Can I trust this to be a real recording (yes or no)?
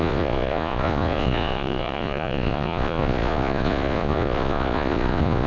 no